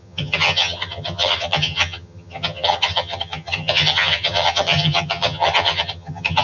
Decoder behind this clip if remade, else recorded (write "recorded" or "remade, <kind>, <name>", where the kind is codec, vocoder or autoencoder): remade, vocoder, HiFi-GAN